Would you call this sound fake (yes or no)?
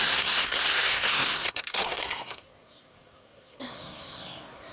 yes